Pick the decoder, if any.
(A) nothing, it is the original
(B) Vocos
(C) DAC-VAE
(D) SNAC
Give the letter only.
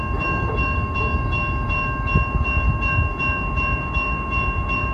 C